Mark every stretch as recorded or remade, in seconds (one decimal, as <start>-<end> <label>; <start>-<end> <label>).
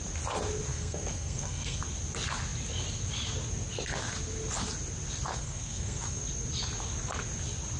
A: 0.0-0.7 recorded; 0.7-1.8 remade; 1.8-5.3 recorded; 5.3-6.2 remade; 6.2-7.8 recorded